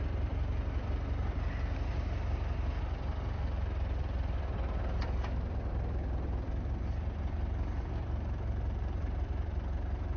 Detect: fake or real fake